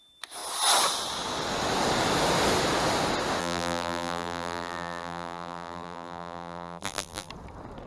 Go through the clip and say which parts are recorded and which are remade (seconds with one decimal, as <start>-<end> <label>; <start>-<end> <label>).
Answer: 0.0-3.4 recorded; 3.4-7.3 remade; 7.3-7.9 recorded